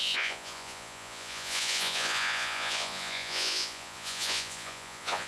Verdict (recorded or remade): remade